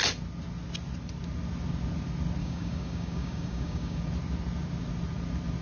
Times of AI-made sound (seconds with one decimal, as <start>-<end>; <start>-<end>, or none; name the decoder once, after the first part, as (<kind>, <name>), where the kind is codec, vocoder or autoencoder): 2.4-4.0 (codec, DAC)